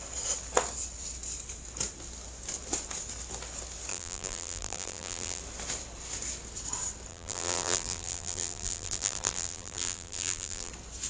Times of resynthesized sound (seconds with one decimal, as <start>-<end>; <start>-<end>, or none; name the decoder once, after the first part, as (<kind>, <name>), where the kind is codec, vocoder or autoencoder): 3.9-5.4 (vocoder, BigVGAN v2); 7.1-10.7